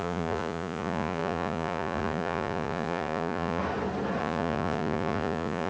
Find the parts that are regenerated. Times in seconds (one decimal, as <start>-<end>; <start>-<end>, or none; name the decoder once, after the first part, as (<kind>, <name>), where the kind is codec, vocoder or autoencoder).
0.0-3.6 (vocoder, Vocos); 4.2-5.7